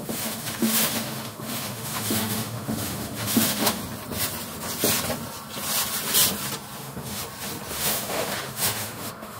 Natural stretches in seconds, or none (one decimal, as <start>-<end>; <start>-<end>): 3.8-6.8; 7.2-7.7